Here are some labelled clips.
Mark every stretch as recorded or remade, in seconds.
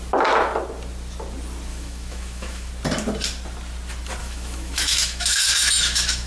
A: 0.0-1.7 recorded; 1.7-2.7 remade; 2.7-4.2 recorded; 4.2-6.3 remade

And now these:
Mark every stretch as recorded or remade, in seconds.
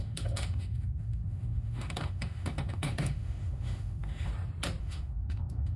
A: 0.0-4.3 remade; 4.3-4.8 recorded; 4.8-5.8 remade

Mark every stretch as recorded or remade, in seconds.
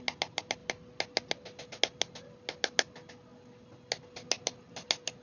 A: 0.0-5.2 recorded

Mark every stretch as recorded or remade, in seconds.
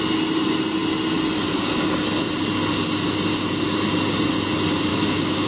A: 0.0-4.9 recorded; 4.9-5.5 remade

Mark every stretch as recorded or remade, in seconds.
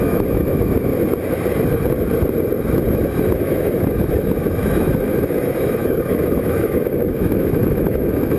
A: 0.0-0.9 remade; 0.9-2.9 recorded; 2.9-8.4 remade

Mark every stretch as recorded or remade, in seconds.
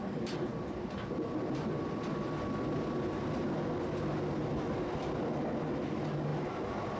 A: 0.0-7.0 recorded